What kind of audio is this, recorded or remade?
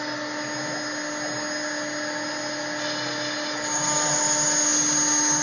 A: recorded